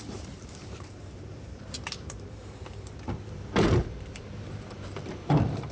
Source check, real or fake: fake